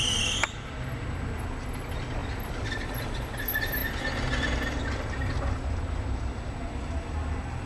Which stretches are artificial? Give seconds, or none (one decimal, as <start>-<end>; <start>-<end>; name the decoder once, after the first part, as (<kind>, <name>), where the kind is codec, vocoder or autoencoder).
none